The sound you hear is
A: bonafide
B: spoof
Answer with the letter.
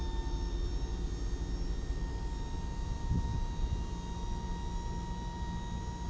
A